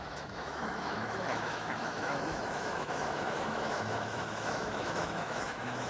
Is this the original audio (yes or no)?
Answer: no